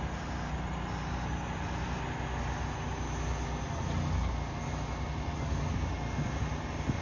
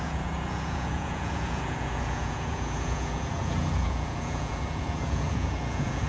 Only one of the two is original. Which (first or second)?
first